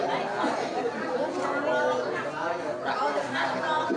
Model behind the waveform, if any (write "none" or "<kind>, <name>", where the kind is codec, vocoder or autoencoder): none